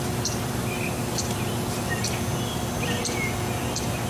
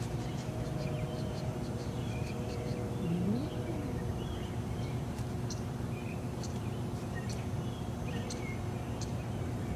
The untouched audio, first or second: first